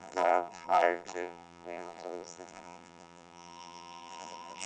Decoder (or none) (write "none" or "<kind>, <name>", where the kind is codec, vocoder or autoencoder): vocoder, BigVGAN v2